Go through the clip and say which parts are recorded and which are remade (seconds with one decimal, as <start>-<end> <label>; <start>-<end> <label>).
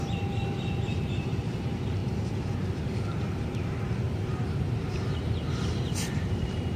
0.0-6.8 remade